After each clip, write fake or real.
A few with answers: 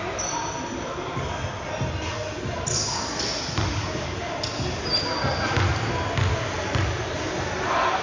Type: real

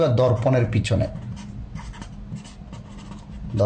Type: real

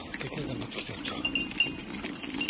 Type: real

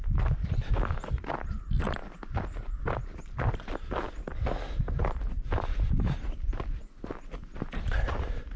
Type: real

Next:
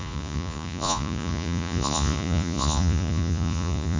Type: fake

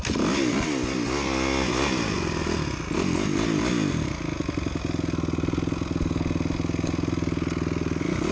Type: real